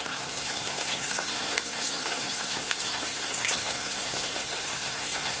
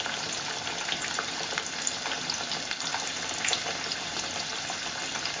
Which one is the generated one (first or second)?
first